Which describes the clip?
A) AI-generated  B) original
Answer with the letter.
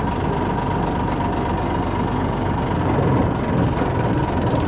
B